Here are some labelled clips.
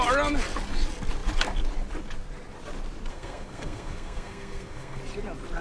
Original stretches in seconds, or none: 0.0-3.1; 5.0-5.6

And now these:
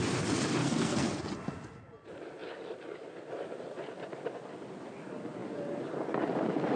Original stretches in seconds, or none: 0.0-0.6; 1.2-6.8

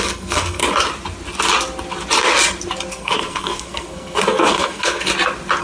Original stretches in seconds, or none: 0.6-2.9; 5.1-5.6

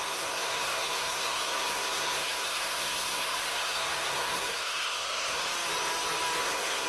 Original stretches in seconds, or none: 5.4-6.4

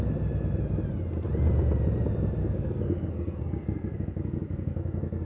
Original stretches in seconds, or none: 0.0-2.4